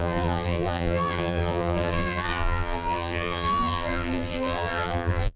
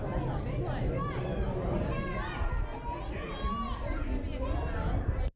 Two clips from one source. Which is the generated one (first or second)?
first